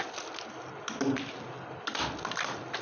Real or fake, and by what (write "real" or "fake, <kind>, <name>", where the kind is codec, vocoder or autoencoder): real